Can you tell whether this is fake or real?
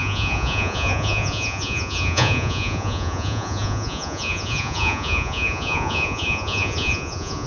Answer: fake